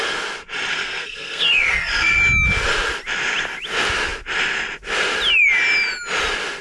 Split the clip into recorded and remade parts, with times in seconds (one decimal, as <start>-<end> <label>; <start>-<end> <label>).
0.0-0.7 recorded; 0.7-2.2 remade; 2.2-6.6 recorded